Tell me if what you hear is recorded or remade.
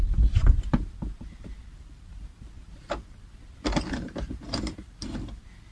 remade